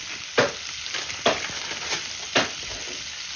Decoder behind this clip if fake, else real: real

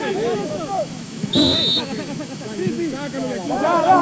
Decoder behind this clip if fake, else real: fake, autoencoder, DAC-VAE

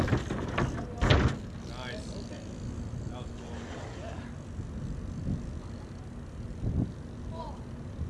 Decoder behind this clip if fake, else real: real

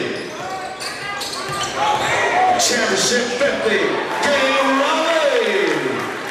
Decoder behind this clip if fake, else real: real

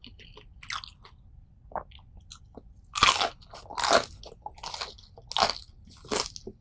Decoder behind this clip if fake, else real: real